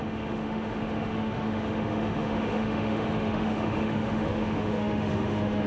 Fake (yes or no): yes